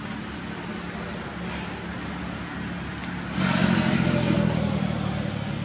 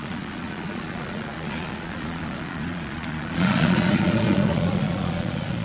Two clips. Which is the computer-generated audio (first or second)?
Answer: second